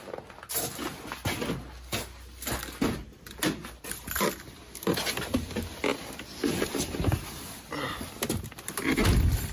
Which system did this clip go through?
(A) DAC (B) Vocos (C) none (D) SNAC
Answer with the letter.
C